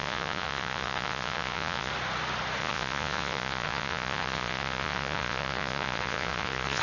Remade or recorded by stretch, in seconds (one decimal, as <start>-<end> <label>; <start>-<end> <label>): 0.0-1.9 remade; 1.9-2.6 recorded; 2.6-6.8 remade